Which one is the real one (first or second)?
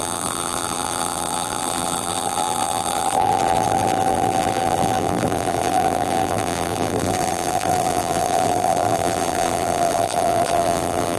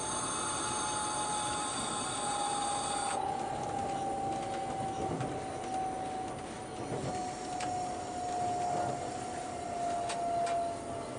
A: second